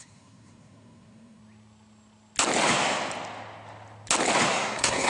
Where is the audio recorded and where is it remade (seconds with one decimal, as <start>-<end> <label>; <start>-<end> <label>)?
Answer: 0.0-1.4 remade; 1.4-4.5 recorded; 4.5-5.1 remade